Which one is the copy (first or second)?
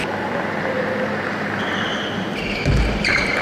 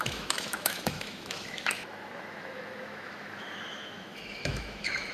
second